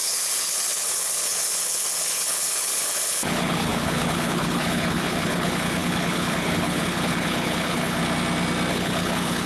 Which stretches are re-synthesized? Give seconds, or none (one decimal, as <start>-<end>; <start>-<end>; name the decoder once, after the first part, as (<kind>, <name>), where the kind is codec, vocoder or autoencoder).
0.0-8.0 (codec, HILCodec); 8.7-9.5